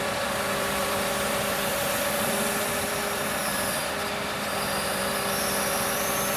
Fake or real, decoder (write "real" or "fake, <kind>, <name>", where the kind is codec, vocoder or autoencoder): fake, vocoder, BigVGAN v2